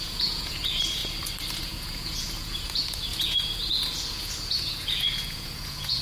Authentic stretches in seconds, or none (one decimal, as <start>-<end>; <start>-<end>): 1.0-1.6